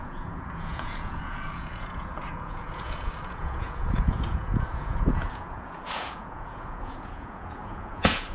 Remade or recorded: remade